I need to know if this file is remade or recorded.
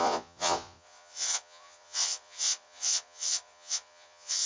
remade